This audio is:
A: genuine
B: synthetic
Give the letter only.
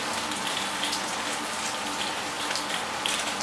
A